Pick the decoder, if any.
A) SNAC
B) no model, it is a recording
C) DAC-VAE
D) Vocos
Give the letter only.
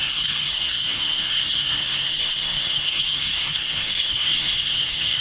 A